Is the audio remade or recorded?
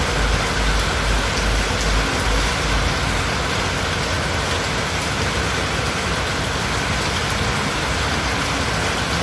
recorded